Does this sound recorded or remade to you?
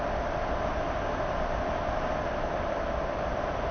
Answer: recorded